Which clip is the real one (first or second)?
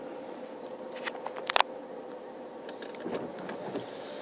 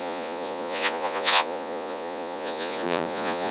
first